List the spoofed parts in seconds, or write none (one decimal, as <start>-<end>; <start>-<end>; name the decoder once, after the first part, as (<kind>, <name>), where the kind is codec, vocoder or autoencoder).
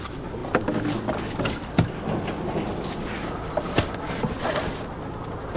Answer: none